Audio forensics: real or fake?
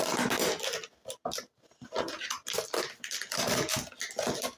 real